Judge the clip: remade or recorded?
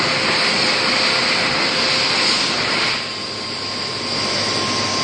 recorded